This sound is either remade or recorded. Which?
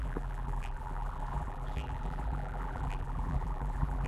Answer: remade